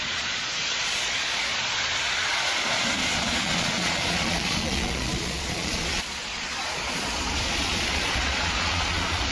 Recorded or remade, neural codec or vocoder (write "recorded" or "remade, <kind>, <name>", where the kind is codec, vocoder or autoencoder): remade, vocoder, Vocos